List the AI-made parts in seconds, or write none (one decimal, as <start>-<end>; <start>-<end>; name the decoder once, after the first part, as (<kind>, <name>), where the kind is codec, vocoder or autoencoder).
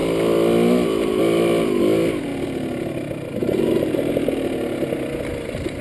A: 3.4-4.1 (vocoder, BigVGAN v2)